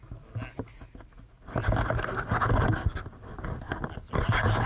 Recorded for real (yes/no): yes